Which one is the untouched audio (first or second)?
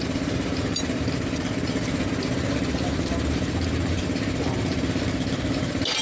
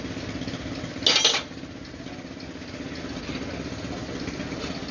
second